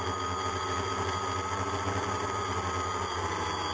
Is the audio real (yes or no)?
yes